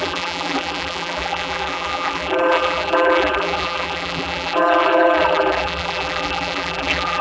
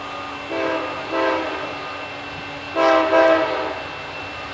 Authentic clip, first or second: second